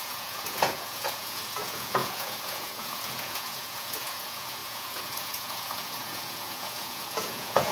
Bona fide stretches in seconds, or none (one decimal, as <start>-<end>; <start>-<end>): none